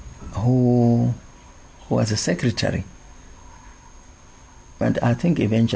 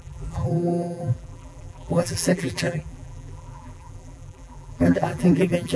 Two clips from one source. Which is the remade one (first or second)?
second